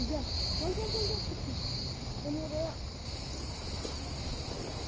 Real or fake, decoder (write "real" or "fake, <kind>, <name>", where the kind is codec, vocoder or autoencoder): real